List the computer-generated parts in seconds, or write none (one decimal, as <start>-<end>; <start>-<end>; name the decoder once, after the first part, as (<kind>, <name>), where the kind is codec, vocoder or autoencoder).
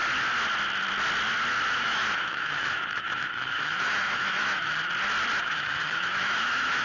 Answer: 1.7-4.7 (autoencoder, DAC-VAE); 5.4-6.8